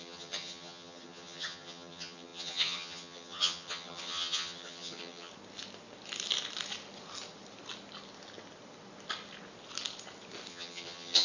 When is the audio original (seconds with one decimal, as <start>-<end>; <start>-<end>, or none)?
5.3-10.5